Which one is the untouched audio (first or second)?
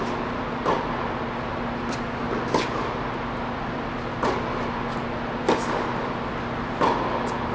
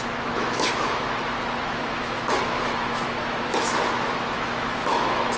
first